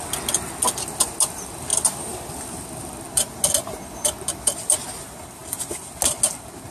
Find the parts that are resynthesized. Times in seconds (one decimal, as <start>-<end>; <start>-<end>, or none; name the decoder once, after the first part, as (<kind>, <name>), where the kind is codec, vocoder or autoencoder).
none

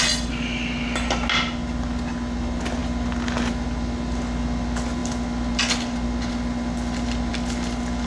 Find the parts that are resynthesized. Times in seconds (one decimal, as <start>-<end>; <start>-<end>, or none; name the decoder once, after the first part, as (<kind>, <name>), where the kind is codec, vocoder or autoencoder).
none

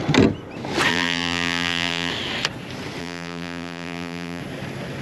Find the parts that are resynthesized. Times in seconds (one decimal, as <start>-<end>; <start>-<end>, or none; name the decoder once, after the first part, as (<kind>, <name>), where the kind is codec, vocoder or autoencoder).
0.9-2.1 (vocoder, BigVGAN v2); 3.0-4.4

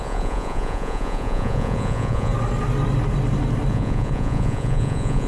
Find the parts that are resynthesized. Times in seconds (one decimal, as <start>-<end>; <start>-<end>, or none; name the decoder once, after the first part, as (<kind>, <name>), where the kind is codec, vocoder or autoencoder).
0.0-2.3 (vocoder, Vocos); 3.7-5.3

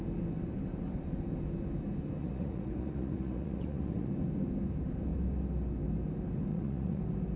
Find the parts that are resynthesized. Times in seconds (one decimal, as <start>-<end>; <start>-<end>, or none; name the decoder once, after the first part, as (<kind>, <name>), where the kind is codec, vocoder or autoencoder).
2.2-4.1 (vocoder, Vocos); 6.5-7.0

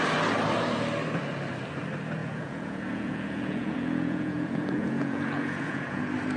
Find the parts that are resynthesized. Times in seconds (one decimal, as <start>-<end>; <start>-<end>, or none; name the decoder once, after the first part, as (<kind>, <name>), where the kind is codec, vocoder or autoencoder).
2.2-6.0 (vocoder, Vocos)

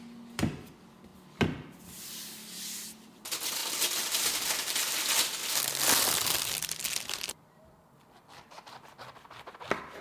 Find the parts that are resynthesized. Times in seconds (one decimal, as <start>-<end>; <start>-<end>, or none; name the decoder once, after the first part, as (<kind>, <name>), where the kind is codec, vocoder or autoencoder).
none